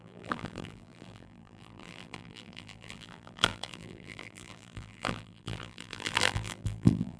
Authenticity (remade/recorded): remade